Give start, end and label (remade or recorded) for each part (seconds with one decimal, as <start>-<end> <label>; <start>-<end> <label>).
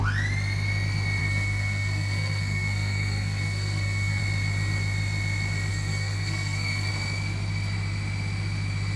0.0-1.2 recorded; 1.2-4.2 remade; 4.2-5.7 recorded; 5.7-6.9 remade; 6.9-9.0 recorded